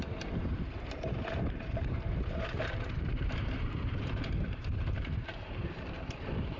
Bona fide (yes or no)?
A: no